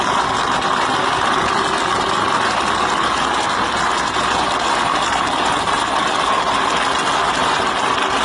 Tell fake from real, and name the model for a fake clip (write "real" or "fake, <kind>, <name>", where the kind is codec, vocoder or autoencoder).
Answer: real